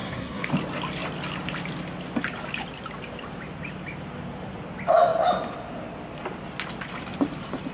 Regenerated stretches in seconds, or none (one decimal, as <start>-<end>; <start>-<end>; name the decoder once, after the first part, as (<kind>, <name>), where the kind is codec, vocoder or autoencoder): 0.0-0.5 (codec, SNAC)